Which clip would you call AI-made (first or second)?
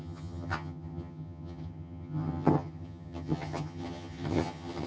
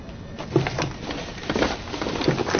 first